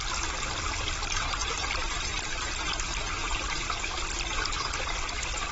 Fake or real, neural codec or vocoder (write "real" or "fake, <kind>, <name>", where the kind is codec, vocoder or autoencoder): real